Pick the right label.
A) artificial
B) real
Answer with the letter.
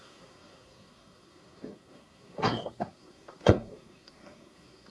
A